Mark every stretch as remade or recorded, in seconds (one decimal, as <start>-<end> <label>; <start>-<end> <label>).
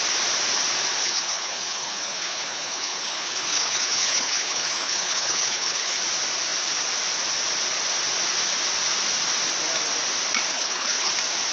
0.0-1.0 recorded; 1.0-6.0 remade; 6.0-10.5 recorded; 10.5-11.1 remade; 11.1-11.5 recorded